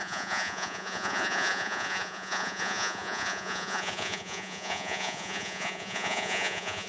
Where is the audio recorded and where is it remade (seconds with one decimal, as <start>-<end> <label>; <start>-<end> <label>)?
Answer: 0.0-6.9 remade